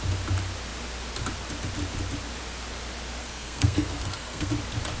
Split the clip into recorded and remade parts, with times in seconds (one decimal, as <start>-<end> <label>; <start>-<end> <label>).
0.0-3.2 recorded; 3.2-4.5 remade; 4.5-5.0 recorded